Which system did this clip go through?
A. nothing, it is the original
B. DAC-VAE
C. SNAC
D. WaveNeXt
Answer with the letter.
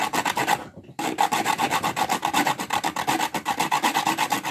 A